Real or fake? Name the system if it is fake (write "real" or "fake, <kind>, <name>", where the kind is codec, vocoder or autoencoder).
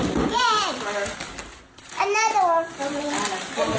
real